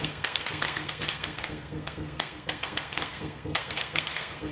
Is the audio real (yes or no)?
no